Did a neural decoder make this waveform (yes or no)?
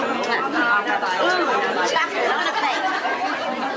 no